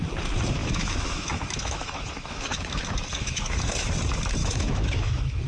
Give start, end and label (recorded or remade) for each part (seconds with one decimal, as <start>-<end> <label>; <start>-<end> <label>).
0.0-0.6 recorded; 0.6-3.9 remade; 3.9-4.4 recorded; 4.4-5.5 remade